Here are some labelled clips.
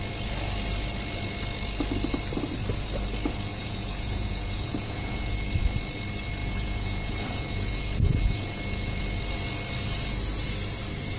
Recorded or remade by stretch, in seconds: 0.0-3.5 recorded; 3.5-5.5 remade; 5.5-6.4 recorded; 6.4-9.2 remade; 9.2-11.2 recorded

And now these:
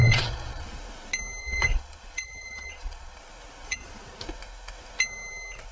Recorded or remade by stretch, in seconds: 0.0-0.8 remade; 0.8-1.4 recorded; 1.4-3.2 remade; 3.2-3.6 recorded; 3.6-4.1 remade; 4.1-5.7 recorded

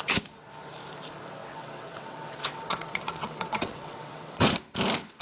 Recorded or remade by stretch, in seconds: 0.0-1.4 recorded; 1.4-4.5 remade; 4.5-5.2 recorded

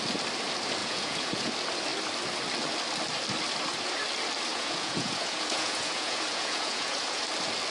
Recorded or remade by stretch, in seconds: 0.0-0.8 recorded; 0.8-1.5 remade; 1.5-4.5 recorded; 4.5-7.2 remade; 7.2-7.7 recorded

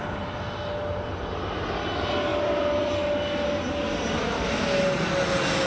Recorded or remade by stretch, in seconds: 0.0-2.3 recorded; 2.3-2.9 remade; 2.9-5.7 recorded

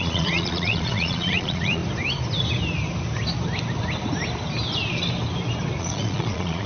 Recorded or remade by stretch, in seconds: 0.0-1.8 remade; 1.8-5.8 recorded; 5.8-6.7 remade

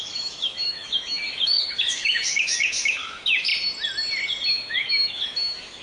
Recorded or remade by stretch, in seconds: 0.0-3.5 remade; 3.5-4.5 recorded; 4.5-5.8 remade